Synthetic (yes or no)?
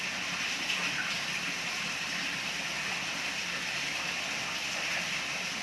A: no